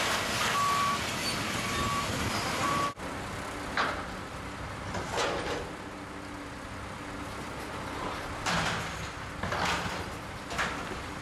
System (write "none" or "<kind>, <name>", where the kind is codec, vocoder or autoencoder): none